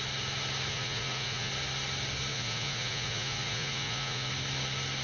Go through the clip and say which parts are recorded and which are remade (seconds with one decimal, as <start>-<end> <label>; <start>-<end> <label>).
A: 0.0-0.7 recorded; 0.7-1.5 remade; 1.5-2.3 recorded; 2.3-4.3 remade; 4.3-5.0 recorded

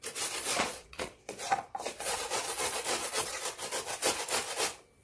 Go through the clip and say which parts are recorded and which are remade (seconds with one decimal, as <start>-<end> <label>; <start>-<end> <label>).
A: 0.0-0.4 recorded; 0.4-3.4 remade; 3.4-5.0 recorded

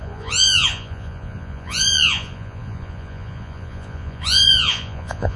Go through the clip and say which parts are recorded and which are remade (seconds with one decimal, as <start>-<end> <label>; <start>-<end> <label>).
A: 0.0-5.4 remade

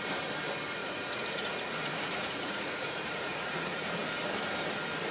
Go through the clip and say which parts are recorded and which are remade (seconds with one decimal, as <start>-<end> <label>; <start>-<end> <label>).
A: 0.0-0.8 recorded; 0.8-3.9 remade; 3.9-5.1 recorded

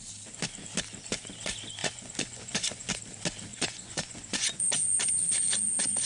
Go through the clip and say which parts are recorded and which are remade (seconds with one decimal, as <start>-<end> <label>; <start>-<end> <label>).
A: 0.0-1.8 recorded; 1.8-2.9 remade; 2.9-3.5 recorded; 3.5-4.9 remade; 4.9-6.1 recorded

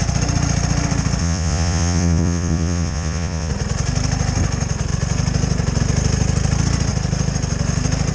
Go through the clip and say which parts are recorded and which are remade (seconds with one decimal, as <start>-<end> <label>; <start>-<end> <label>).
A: 0.0-1.2 recorded; 1.2-3.5 remade; 3.5-8.1 recorded

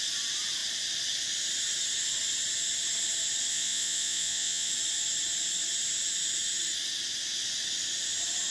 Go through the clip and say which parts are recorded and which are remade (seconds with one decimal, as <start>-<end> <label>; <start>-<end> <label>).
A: 0.0-3.5 recorded; 3.5-4.7 remade; 4.7-8.5 recorded

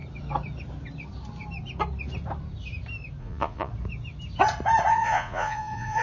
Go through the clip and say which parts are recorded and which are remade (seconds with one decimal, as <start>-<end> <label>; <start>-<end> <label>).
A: 0.0-3.2 recorded; 3.2-3.7 remade; 3.7-4.9 recorded; 4.9-6.0 remade